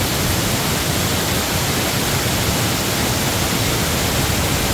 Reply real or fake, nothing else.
fake